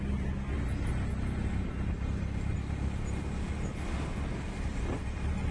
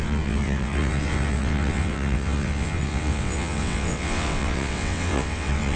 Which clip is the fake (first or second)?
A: second